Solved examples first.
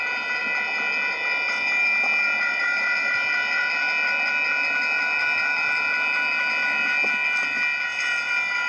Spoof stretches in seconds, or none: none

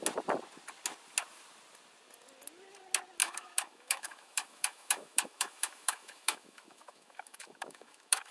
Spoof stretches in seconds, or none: 3.2-8.3